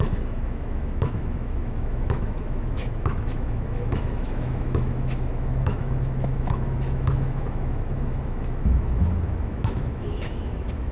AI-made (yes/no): yes